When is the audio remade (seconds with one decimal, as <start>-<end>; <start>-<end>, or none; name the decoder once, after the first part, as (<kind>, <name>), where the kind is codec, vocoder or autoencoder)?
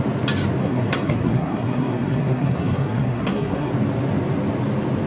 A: 0.6-3.7 (codec, SNAC)